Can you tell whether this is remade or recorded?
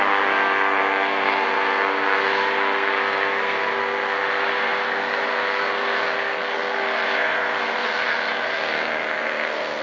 remade